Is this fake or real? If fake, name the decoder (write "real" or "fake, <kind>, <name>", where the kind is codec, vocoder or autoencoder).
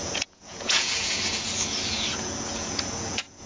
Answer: fake, vocoder, Vocos